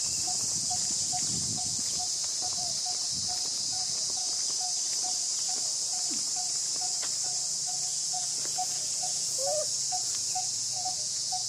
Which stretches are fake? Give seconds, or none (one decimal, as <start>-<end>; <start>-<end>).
1.5-2.0; 3.5-4.2; 7.9-11.5